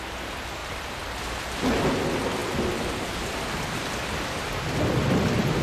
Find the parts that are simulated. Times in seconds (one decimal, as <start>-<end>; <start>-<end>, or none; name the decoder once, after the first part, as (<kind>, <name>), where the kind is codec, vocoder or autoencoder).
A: 0.6-1.1 (vocoder, BigVGAN v2); 2.4-4.7